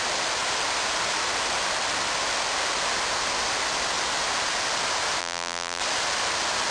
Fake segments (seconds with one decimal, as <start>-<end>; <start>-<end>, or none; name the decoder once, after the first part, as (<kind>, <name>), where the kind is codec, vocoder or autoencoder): 5.2-5.8 (vocoder, BigVGAN v2)